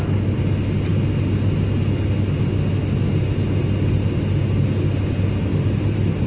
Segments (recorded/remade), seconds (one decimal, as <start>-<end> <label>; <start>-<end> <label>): 0.0-5.5 recorded; 5.5-6.3 remade